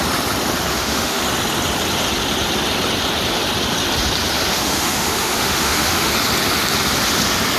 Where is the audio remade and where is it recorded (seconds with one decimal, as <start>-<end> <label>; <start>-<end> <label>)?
0.0-0.7 recorded; 0.7-1.2 remade; 1.2-4.5 recorded; 4.5-6.1 remade; 6.1-7.6 recorded